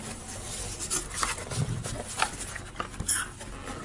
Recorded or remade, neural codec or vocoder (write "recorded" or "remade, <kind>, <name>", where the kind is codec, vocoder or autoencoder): recorded